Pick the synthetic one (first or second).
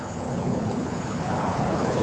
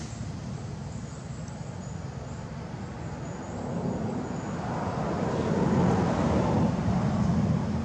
first